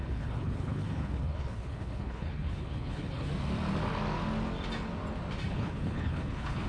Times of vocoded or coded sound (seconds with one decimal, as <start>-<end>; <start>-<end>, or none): 0.0-3.3; 5.5-6.7